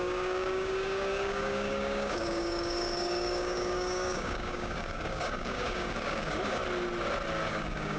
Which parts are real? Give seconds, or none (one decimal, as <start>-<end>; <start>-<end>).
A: 6.6-7.5